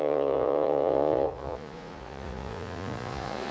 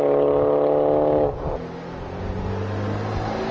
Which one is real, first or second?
second